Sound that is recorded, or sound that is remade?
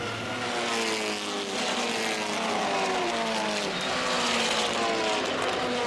recorded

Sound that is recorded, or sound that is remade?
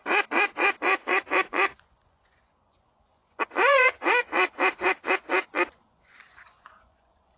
remade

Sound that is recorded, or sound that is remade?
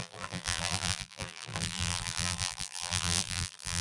remade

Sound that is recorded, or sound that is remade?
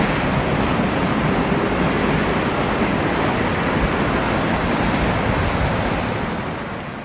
recorded